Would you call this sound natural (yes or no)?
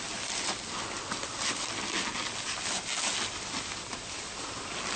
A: yes